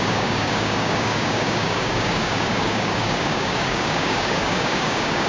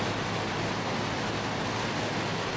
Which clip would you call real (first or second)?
second